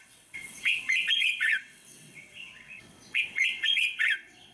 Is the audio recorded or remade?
remade